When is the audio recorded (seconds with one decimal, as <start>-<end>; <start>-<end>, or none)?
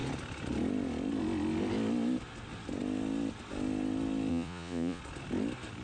0.0-4.3; 5.0-5.8